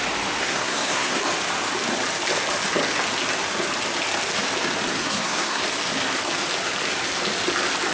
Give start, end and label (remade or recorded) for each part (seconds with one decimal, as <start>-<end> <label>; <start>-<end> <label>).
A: 0.0-0.4 recorded; 0.4-1.2 remade; 1.2-5.0 recorded; 5.0-5.6 remade; 5.6-7.9 recorded